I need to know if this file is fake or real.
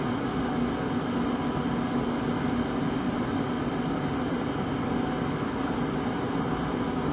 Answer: real